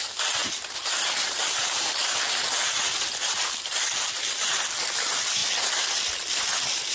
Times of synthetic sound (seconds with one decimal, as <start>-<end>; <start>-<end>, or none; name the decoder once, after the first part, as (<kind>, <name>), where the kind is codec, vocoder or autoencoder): none